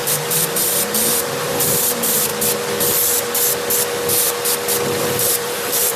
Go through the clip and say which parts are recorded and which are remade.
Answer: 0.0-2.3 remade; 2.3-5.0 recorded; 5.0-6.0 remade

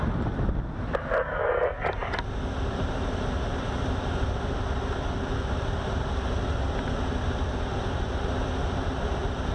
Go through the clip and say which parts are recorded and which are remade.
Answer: 0.0-9.5 recorded

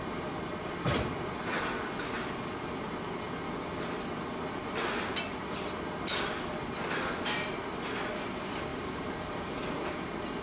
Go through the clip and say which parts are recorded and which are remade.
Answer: 0.0-8.7 recorded; 8.7-9.5 remade; 9.5-10.4 recorded

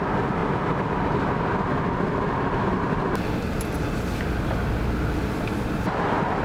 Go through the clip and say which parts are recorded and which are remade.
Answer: 0.0-6.4 recorded

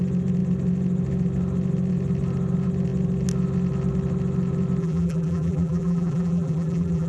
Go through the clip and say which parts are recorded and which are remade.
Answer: 0.0-4.8 recorded; 4.8-7.1 remade

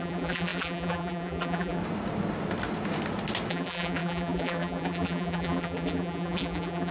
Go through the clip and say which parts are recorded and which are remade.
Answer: 0.0-1.8 remade; 1.8-3.5 recorded; 3.5-6.9 remade

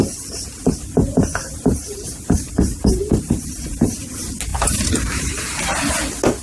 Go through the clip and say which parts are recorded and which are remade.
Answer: 0.0-1.3 recorded; 1.3-3.4 remade; 3.4-4.5 recorded; 4.5-5.6 remade; 5.6-6.4 recorded